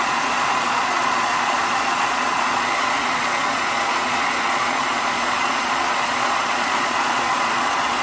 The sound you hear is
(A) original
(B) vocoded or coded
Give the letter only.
B